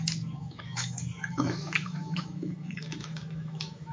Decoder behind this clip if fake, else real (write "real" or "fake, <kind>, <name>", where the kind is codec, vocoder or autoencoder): fake, autoencoder, DAC-VAE